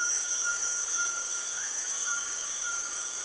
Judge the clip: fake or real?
fake